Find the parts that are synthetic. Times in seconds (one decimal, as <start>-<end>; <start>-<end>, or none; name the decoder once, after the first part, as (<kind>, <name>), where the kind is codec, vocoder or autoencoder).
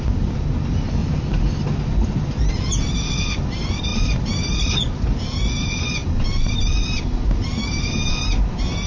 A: 1.0-2.5 (vocoder, BigVGAN v2); 3.9-4.6